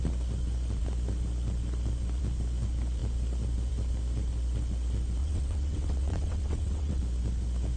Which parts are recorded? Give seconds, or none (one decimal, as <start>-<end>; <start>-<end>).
0.0-5.2; 7.0-7.8